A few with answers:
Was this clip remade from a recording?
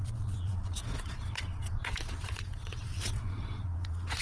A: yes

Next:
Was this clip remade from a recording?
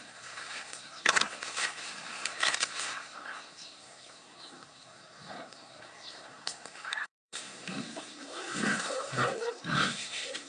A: yes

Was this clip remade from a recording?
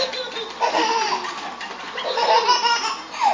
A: no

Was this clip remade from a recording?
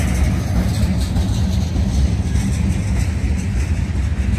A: no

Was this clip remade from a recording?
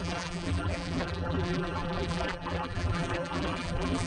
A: yes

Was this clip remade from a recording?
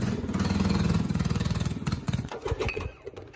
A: yes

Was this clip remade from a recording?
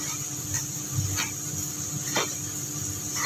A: no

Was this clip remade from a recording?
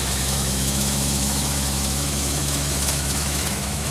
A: yes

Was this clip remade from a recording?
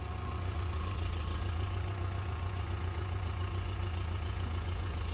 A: yes